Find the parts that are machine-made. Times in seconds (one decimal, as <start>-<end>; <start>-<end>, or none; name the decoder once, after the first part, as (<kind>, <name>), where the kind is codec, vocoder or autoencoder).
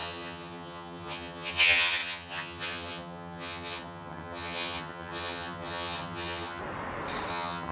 0.0-6.6 (vocoder, HiFi-GAN); 7.3-7.7